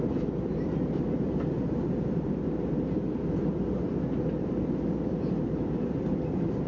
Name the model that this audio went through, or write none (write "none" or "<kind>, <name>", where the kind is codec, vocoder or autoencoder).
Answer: vocoder, BigVGAN v2